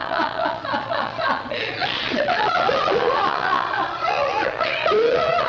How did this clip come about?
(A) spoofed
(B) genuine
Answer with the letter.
A